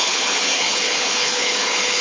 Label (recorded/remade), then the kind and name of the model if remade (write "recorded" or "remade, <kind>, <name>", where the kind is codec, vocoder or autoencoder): remade, codec, HILCodec